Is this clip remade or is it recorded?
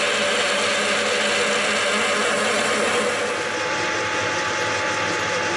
recorded